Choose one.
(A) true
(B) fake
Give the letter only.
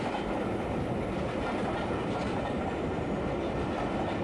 B